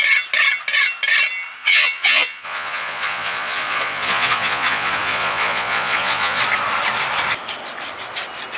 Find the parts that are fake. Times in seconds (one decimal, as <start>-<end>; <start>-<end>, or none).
1.6-6.4